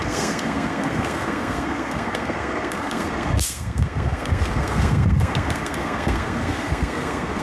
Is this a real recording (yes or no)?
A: no